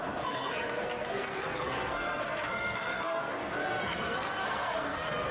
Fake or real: fake